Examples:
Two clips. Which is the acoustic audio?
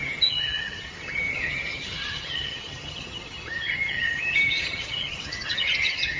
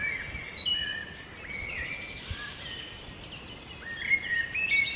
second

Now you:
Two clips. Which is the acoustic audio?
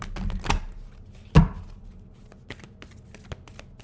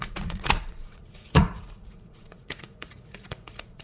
first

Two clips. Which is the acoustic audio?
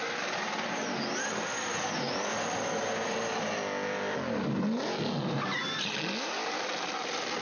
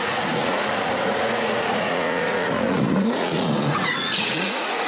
first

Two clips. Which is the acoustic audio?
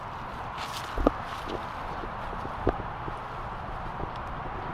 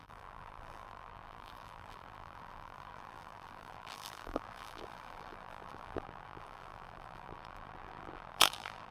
first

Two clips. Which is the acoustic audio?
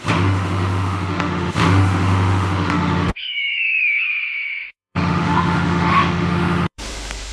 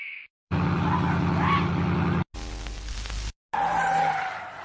second